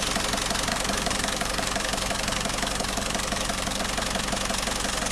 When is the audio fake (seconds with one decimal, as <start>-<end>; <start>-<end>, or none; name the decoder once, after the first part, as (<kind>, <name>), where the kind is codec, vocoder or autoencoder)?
0.7-3.8 (codec, DAC)